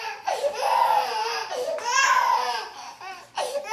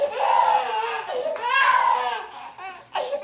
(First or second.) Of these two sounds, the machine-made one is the first